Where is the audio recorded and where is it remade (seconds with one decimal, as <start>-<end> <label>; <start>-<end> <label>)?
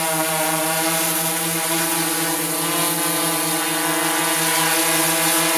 0.0-5.6 recorded